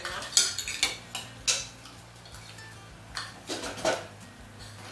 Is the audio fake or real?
real